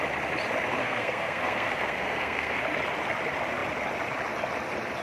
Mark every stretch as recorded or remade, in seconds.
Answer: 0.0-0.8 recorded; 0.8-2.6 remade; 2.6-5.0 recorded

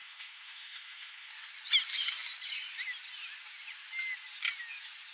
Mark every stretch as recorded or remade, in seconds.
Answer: 0.0-1.3 remade; 1.3-5.1 recorded

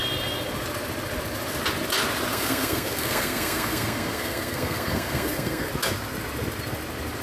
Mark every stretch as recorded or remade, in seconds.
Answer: 0.0-2.3 recorded; 2.3-5.7 remade; 5.7-7.2 recorded

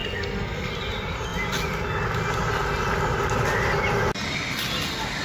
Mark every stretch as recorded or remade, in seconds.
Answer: 0.0-0.7 remade; 0.7-5.2 recorded

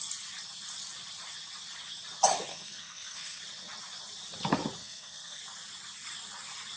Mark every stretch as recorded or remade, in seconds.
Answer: 0.0-2.5 recorded; 2.5-3.4 remade; 3.4-4.8 recorded; 4.8-5.4 remade; 5.4-6.8 recorded

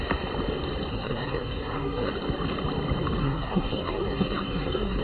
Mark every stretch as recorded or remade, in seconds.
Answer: 0.0-0.9 recorded; 0.9-2.1 remade; 2.1-3.2 recorded; 3.2-5.0 remade